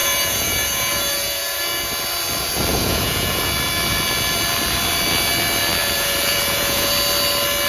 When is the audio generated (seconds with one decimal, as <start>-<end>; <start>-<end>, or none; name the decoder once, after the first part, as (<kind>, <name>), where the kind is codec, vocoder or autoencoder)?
0.0-1.6 (vocoder, Vocos); 2.7-3.5; 5.8-6.9